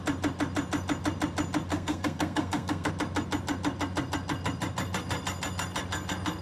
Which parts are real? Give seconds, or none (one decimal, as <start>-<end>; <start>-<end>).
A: 0.0-1.7; 2.9-6.4